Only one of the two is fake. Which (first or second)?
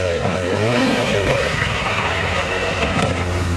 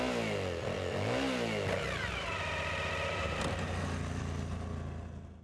first